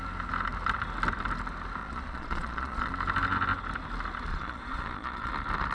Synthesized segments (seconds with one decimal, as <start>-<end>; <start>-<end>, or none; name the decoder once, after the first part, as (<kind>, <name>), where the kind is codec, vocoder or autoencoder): 1.8-2.9 (vocoder, Vocos); 4.3-5.3